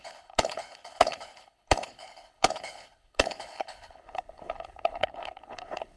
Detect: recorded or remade remade